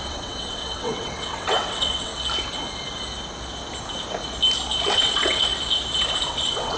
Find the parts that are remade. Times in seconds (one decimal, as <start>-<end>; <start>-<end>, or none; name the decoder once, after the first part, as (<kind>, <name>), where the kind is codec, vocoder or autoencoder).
0.0-2.1 (vocoder, WaveNeXt); 4.9-5.5; 6.3-6.8